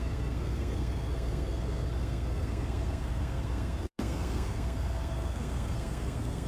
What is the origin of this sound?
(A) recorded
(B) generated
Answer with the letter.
B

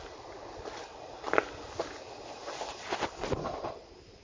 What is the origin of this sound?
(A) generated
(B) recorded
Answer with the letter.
B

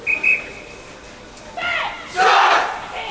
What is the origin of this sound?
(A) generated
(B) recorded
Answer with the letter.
B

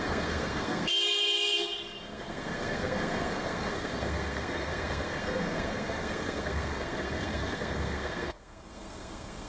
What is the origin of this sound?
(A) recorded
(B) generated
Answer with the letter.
B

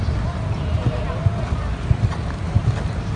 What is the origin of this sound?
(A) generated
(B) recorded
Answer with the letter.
B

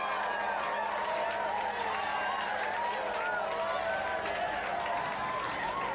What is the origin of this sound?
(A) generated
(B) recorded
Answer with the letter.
B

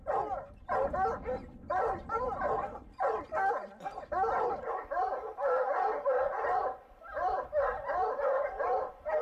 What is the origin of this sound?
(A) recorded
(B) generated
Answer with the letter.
A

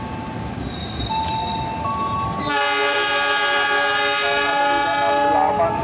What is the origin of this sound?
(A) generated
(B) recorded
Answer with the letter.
B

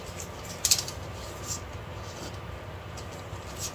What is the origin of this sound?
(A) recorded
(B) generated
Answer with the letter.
A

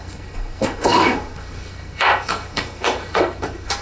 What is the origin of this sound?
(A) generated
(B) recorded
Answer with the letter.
A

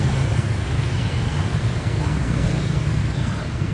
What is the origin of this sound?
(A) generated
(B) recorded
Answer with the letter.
A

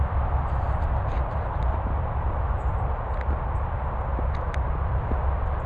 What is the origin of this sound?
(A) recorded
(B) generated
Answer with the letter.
A